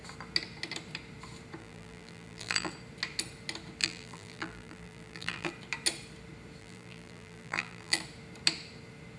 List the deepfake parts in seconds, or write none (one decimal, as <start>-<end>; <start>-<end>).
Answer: 1.6-2.7; 3.8-5.5; 6.6-8.0